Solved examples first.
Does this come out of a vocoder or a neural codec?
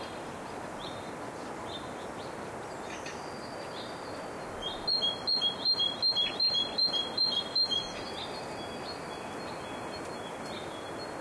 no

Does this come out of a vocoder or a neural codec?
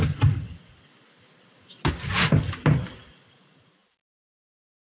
no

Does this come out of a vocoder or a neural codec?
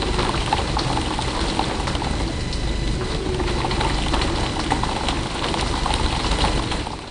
no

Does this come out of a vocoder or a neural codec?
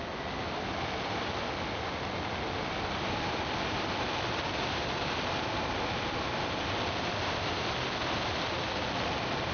no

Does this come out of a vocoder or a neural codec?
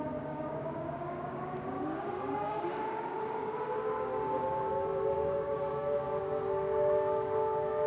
yes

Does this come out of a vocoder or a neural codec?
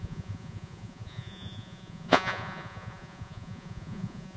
yes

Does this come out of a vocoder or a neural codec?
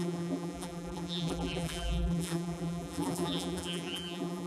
yes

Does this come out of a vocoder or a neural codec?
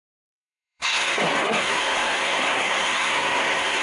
yes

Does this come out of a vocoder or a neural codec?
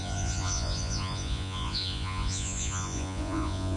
yes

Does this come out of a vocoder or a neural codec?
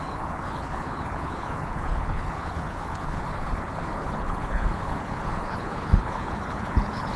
yes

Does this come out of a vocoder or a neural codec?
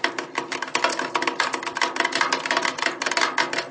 no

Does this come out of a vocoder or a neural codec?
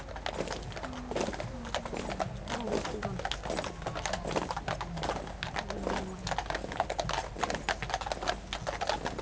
no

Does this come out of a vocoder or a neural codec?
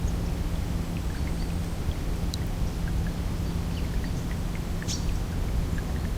no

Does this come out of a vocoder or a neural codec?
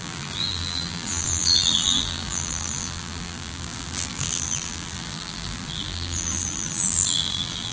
yes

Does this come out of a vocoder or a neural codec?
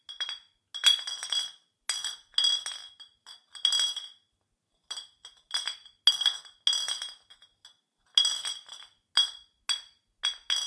no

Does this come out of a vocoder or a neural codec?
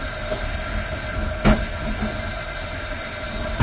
no